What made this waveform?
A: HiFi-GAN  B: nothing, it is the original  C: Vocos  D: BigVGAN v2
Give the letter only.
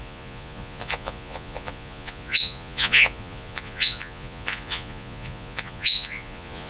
C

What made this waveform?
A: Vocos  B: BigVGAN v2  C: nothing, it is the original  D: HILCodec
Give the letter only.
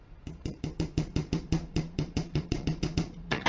A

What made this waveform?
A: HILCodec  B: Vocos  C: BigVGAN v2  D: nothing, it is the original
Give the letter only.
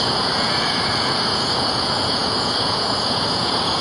B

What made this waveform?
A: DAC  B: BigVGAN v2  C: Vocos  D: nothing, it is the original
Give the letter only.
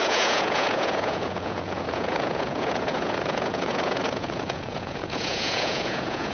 C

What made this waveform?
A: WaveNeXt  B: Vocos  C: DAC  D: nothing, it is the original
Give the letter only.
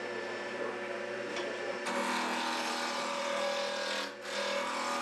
D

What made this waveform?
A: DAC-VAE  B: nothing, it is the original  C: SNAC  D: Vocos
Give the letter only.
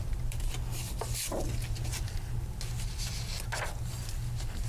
B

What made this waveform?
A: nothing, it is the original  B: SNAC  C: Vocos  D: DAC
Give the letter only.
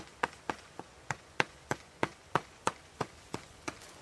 C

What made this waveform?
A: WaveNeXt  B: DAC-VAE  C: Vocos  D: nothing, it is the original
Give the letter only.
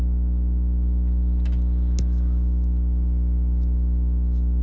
D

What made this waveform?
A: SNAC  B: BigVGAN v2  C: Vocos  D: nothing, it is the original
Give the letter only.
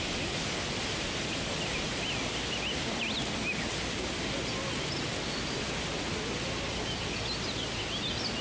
D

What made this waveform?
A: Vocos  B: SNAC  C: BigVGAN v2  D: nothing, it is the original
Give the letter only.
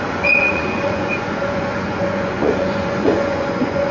A